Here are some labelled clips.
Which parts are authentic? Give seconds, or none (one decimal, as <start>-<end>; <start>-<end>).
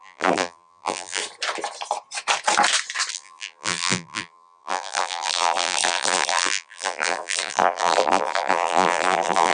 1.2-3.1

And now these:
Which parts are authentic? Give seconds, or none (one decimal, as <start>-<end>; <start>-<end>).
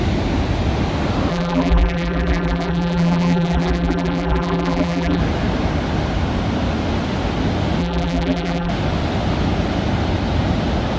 0.0-1.3; 5.2-7.8; 8.7-11.0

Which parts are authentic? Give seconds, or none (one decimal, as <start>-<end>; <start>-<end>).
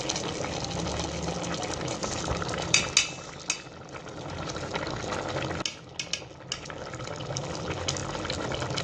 0.0-2.0; 2.8-4.0; 4.8-8.8